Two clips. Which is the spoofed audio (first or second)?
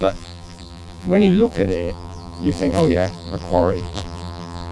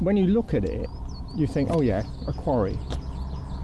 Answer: first